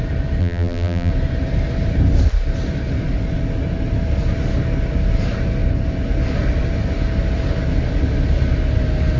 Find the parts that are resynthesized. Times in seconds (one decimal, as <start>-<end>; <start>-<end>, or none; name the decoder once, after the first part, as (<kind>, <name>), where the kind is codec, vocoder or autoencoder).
0.4-1.1 (vocoder, BigVGAN v2)